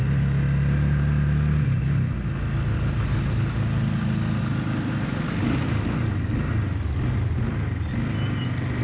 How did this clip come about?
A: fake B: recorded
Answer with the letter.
B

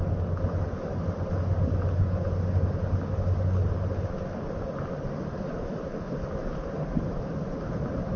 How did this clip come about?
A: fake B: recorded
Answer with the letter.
B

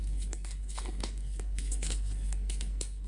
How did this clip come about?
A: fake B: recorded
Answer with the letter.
A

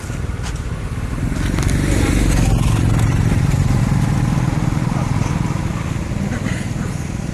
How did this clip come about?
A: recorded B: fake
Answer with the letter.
A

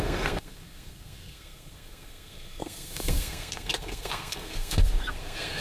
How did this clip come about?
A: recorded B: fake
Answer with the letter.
B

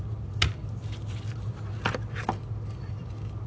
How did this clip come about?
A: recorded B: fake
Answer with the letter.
A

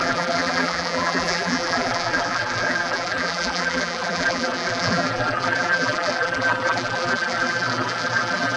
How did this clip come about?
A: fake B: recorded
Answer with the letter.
A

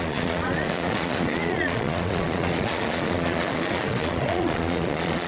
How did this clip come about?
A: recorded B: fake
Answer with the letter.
B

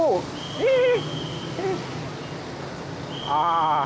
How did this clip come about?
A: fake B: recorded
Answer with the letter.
B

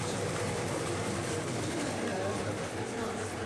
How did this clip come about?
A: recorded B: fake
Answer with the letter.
B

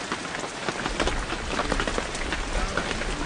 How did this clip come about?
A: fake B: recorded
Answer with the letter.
B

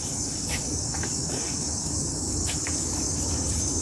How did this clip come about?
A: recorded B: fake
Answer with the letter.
B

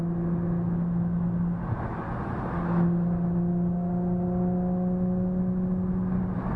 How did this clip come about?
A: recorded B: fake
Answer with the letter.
A